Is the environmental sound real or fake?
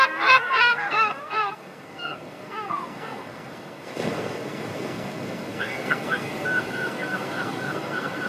fake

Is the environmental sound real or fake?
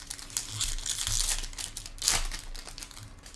real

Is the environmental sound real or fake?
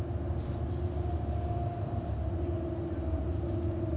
real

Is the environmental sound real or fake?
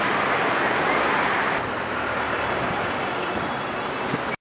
real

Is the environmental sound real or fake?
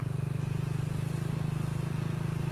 real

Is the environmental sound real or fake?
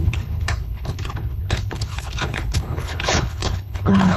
fake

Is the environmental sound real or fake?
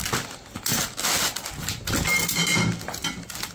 real